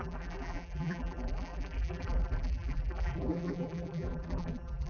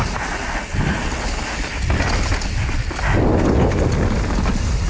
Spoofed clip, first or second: first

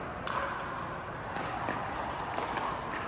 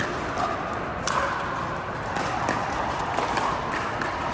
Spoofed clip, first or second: second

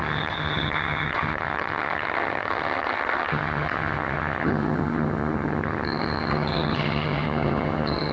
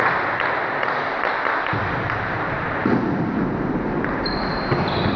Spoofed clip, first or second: first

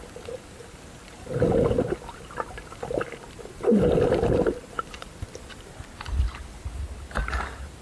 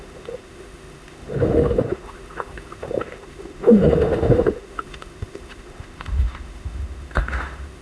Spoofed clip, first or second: second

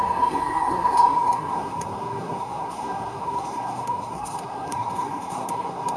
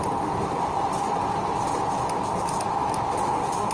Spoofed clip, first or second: first